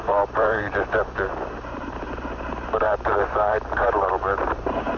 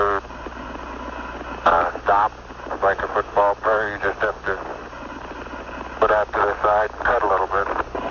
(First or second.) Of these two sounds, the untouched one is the second